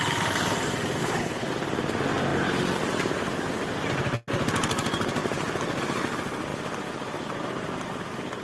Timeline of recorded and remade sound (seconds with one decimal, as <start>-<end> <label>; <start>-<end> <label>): 0.0-1.0 recorded; 1.0-1.5 remade; 1.5-8.4 recorded